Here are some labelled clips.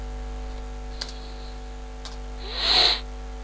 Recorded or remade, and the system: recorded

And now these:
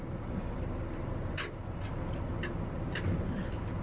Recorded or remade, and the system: recorded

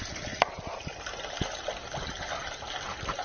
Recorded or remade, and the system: remade, vocoder, BigVGAN v2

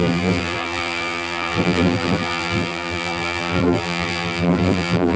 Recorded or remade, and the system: remade, vocoder, BigVGAN v2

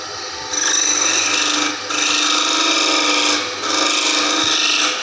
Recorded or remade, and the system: recorded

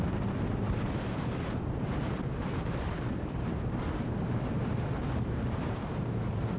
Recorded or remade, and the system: remade, vocoder, BigVGAN v2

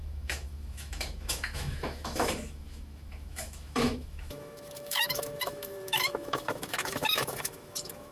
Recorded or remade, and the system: remade, autoencoder, DAC-VAE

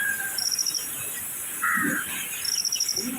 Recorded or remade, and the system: remade, vocoder, BigVGAN v2